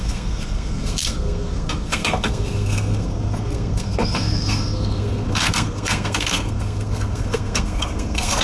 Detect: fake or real fake